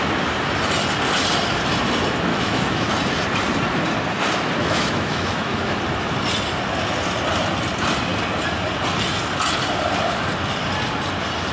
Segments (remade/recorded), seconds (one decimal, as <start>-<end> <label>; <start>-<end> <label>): 0.0-2.3 recorded; 2.3-2.9 remade; 2.9-4.6 recorded; 4.6-5.8 remade; 5.8-11.5 recorded